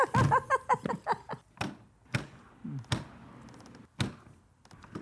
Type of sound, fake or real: real